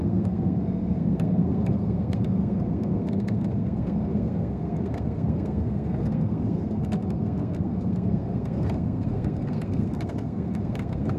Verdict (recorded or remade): remade